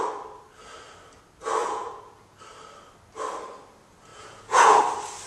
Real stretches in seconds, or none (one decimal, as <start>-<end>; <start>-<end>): 0.0-1.6; 2.4-4.1; 4.8-5.3